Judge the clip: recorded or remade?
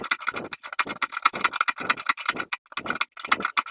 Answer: recorded